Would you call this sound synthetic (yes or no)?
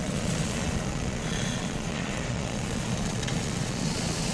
yes